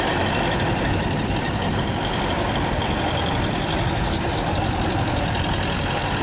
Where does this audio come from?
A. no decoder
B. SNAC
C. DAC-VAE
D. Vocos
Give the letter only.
A